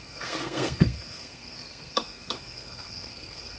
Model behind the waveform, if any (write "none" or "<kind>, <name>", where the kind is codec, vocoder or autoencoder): codec, SNAC